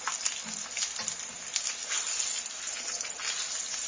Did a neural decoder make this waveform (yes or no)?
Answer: no